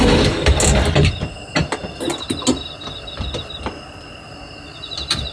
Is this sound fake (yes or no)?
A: no